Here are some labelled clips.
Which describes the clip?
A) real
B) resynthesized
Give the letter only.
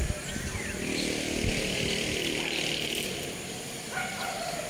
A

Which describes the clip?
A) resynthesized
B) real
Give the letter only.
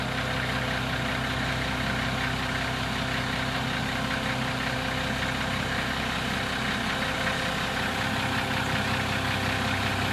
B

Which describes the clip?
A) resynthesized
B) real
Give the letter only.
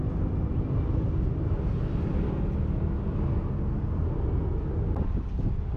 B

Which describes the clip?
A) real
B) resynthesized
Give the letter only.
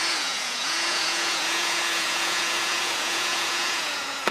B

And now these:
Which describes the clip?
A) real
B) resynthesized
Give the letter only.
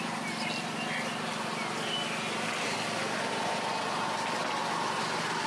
A